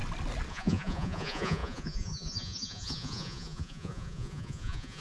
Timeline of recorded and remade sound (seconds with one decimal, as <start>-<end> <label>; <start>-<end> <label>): 0.0-0.5 recorded; 0.5-5.0 remade

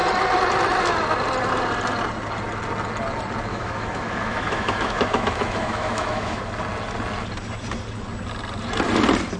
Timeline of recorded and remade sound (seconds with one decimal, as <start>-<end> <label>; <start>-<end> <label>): 0.0-3.5 recorded; 3.5-6.4 remade; 6.4-9.4 recorded